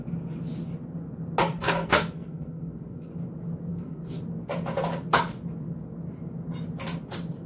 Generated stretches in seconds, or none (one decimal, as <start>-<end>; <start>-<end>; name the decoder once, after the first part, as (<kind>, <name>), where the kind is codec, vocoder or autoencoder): 1.4-3.1 (codec, SNAC); 3.7-4.2